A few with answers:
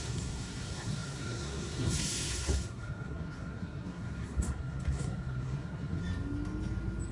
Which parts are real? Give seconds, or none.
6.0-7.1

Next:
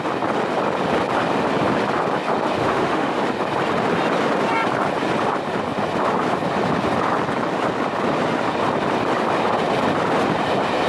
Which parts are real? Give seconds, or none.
0.0-2.6; 3.2-10.9

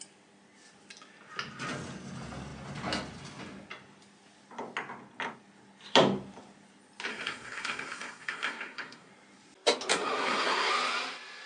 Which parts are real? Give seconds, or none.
0.0-7.1; 9.1-9.9; 10.7-11.5

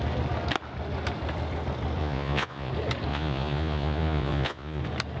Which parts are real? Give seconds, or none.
0.0-2.0; 2.7-3.1; 4.8-5.2